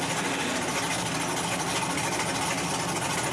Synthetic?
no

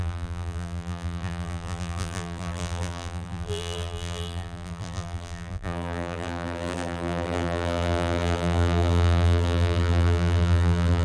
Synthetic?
yes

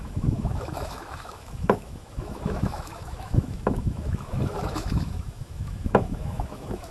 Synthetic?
yes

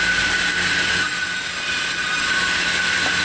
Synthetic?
no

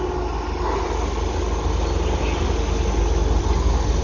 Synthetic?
no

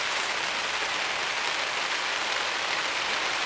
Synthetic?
no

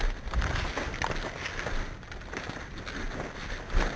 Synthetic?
no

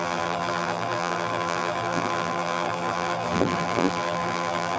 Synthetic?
yes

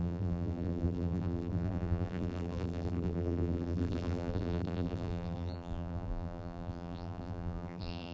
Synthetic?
yes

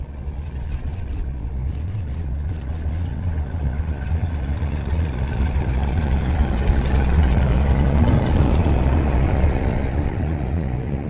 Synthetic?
yes